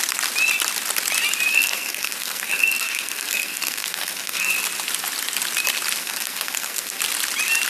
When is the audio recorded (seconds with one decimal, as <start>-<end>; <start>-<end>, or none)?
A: 0.0-1.5; 4.5-6.0; 7.0-7.7